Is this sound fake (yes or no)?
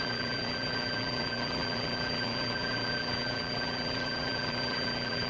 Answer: yes